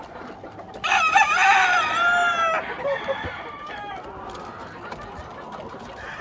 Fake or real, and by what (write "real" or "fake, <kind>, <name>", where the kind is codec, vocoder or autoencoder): fake, vocoder, BigVGAN v2